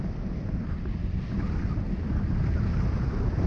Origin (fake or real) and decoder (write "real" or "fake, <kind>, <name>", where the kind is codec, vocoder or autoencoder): real